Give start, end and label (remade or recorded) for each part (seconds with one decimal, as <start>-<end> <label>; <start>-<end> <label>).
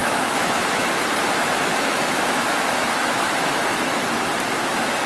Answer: 0.0-0.9 remade; 0.9-1.4 recorded; 1.4-4.3 remade; 4.3-5.1 recorded